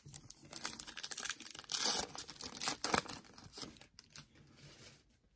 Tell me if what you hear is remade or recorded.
recorded